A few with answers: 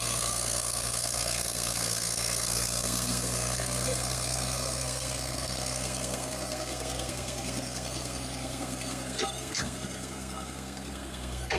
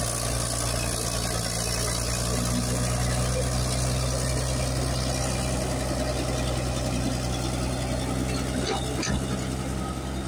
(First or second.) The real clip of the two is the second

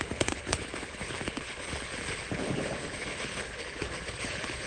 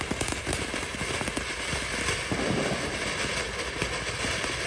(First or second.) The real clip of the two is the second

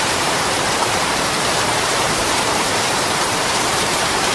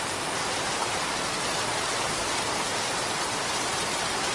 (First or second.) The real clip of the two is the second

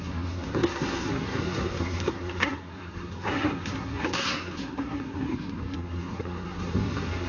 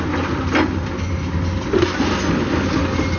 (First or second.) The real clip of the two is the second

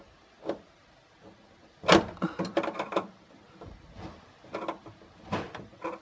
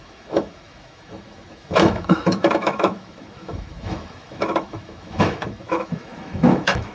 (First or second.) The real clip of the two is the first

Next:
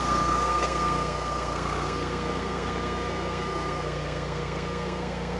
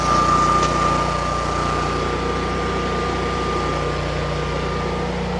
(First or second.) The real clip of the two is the second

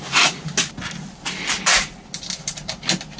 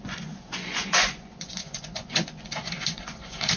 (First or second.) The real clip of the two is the first